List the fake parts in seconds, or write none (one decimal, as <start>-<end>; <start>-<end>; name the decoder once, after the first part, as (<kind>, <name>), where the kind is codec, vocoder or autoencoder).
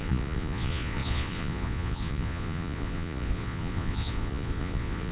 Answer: 0.0-5.1 (vocoder, Vocos)